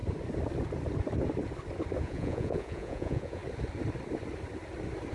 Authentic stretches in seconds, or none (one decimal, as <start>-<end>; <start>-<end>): 0.0-2.0; 3.4-5.1